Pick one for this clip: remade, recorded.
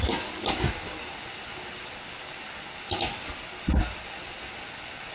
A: recorded